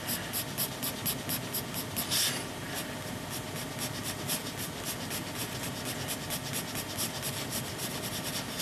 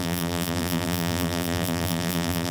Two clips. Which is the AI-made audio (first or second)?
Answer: second